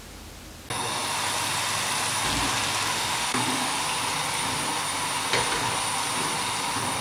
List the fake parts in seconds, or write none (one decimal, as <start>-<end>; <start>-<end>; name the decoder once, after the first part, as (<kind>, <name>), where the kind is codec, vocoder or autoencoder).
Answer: 2.9-3.8 (autoencoder, DAC-VAE)